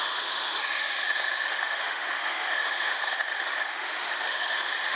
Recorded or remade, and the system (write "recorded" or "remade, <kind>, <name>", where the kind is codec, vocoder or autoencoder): remade, autoencoder, DAC-VAE